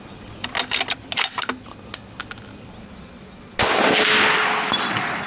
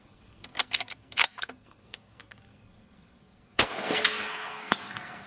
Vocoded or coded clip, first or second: second